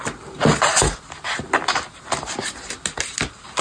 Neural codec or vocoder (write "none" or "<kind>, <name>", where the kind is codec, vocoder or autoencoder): none